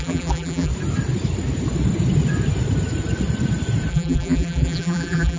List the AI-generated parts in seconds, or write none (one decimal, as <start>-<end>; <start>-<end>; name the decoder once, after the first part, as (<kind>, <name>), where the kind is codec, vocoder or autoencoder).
0.0-0.7 (vocoder, BigVGAN v2); 3.9-5.4

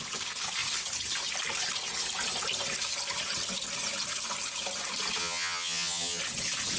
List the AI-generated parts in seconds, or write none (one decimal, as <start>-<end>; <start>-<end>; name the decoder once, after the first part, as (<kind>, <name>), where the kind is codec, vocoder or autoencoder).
5.2-6.2 (vocoder, HiFi-GAN)

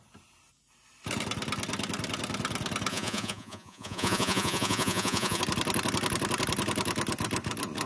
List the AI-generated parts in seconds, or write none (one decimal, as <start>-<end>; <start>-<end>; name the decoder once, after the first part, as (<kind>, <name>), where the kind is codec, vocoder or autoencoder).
2.9-5.4 (vocoder, Vocos)

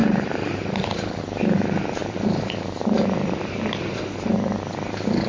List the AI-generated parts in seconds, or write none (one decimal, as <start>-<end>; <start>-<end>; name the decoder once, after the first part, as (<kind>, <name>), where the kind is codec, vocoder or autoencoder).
0.0-1.2 (vocoder, BigVGAN v2); 2.0-4.6

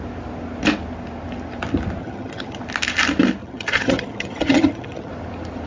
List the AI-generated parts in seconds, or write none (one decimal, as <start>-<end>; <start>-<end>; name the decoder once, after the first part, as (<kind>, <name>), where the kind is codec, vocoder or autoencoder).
2.0-2.6 (vocoder, HiFi-GAN); 3.4-5.1

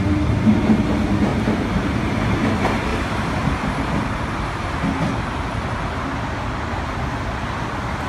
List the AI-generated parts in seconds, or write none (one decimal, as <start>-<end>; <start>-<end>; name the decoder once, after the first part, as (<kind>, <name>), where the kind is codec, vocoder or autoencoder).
1.3-2.3 (vocoder, BigVGAN v2); 2.9-3.8